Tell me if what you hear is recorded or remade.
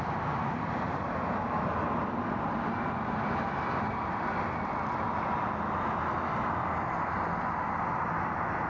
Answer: recorded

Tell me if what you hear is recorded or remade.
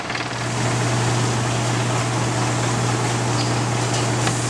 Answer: recorded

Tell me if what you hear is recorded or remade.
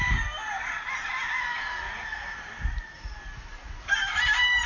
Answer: recorded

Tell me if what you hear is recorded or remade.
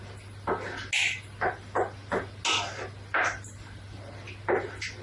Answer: recorded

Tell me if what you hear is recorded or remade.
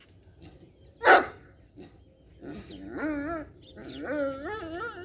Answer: recorded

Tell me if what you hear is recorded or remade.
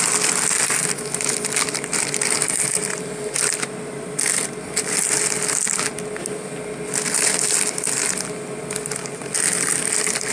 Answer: recorded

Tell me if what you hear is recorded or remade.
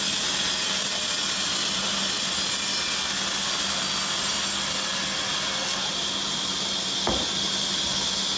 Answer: recorded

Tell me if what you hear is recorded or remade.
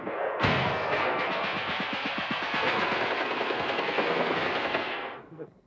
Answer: remade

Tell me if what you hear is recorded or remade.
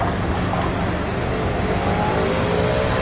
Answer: recorded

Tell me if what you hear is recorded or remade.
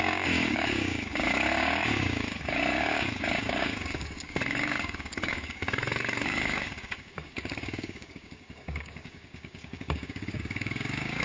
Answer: remade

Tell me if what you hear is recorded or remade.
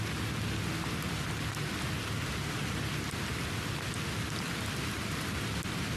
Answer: recorded